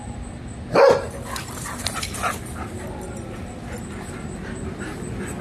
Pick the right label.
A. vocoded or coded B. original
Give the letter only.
B